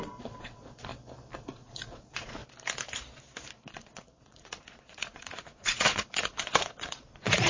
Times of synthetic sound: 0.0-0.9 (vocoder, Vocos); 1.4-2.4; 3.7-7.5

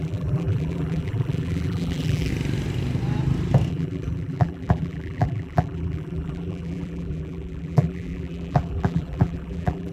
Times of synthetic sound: 0.0-2.3 (vocoder, BigVGAN v2); 3.7-9.9

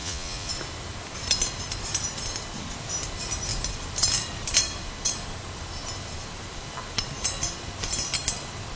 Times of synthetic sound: 0.0-0.5 (vocoder, Vocos)

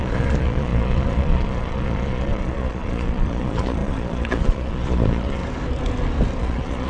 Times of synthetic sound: 0.0-5.4 (vocoder, Vocos); 6.4-6.9

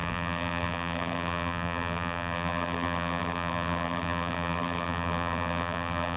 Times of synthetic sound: 0.0-6.2 (vocoder, BigVGAN v2)

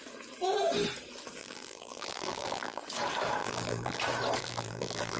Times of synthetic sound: 1.4-2.8 (vocoder, BigVGAN v2); 3.4-4.0; 4.4-5.2